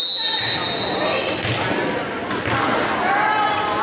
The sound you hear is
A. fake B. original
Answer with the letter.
B